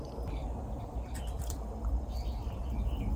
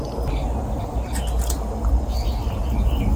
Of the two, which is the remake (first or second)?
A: first